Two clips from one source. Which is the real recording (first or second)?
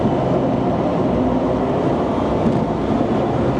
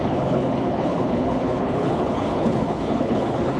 first